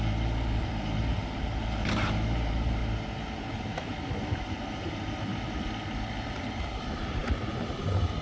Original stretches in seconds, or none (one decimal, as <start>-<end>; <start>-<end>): 2.8-4.2; 5.3-6.6

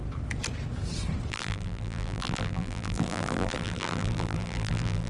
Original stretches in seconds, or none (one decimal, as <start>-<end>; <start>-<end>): 0.0-1.3